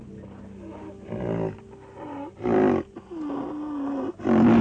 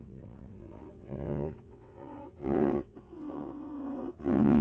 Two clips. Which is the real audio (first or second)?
first